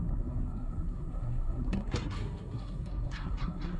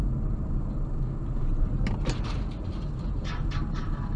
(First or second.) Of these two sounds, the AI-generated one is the first